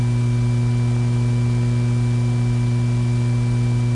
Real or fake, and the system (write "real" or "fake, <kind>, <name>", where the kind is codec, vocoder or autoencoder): real